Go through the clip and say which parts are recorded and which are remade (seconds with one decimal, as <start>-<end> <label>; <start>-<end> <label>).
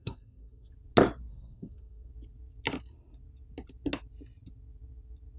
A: 0.0-0.7 remade; 0.7-1.3 recorded; 1.3-2.1 remade; 2.1-5.4 recorded